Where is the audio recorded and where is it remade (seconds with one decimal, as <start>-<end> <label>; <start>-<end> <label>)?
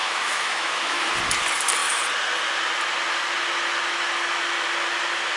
0.0-1.1 remade; 1.1-5.4 recorded